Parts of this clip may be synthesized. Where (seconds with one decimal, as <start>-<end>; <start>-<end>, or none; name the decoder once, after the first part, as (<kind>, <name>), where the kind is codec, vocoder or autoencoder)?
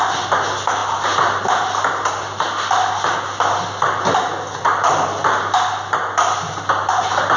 none